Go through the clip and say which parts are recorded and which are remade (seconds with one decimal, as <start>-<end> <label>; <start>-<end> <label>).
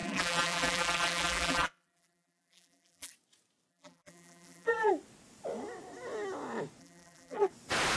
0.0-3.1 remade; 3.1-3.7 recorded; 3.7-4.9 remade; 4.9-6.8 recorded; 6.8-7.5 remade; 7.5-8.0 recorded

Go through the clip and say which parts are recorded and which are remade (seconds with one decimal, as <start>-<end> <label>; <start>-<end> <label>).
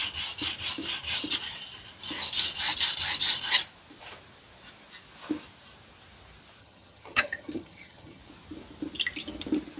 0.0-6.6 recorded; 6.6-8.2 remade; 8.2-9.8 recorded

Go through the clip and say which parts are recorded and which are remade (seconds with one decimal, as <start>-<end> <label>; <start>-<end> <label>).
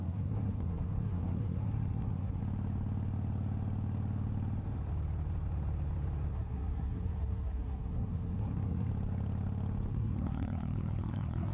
0.0-2.4 remade; 2.4-6.3 recorded; 6.3-8.9 remade; 8.9-9.9 recorded; 9.9-11.5 remade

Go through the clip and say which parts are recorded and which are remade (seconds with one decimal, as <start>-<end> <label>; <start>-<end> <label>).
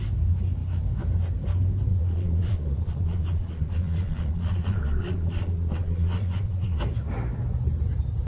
0.0-1.9 recorded; 1.9-6.8 remade; 6.8-8.3 recorded